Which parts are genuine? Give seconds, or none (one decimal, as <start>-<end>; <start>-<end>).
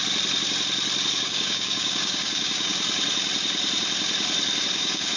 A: 0.0-1.1; 2.7-4.6